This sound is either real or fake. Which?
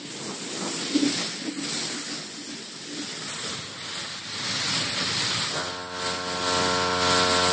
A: real